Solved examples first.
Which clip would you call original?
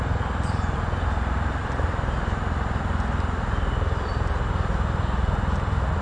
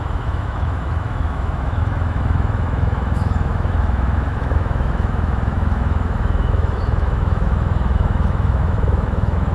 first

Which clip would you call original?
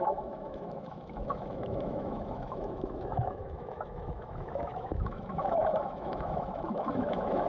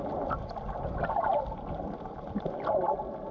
second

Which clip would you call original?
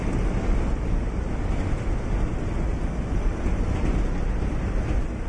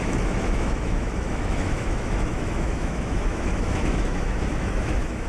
first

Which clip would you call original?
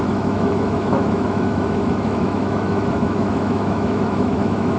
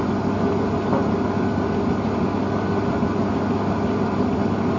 second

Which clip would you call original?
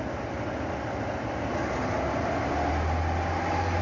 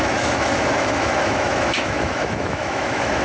first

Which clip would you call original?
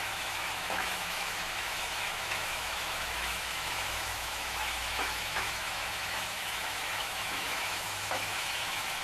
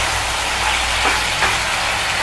second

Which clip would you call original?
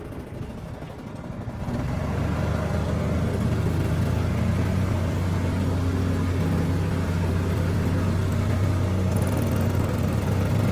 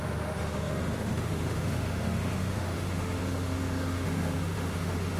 first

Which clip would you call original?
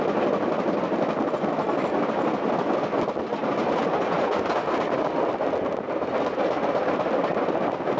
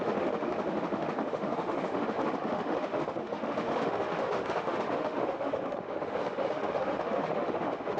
first